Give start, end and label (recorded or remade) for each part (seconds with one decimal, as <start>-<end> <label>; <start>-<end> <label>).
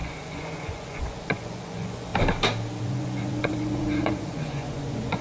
0.0-2.1 remade; 2.1-2.8 recorded; 2.8-5.2 remade